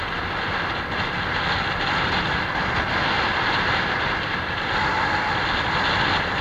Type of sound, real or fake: real